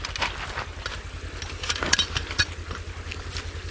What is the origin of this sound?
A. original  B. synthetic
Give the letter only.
A